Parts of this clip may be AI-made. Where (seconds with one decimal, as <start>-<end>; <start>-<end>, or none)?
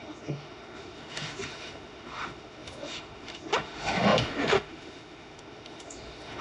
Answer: 0.0-6.4